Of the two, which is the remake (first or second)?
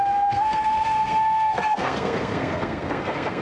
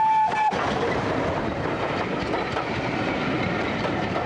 first